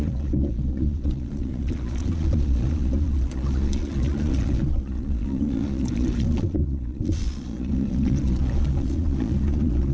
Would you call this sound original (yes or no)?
no